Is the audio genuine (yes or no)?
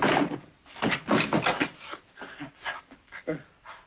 yes